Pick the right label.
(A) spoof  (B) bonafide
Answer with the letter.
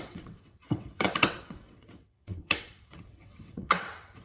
A